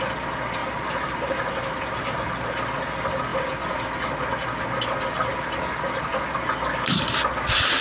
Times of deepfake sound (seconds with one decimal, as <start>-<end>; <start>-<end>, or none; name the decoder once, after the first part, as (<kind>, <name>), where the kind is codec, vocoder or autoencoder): 0.6-2.4 (vocoder, BigVGAN v2)